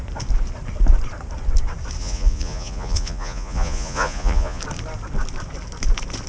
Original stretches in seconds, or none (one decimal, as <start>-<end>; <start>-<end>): 0.0-2.0; 4.6-6.3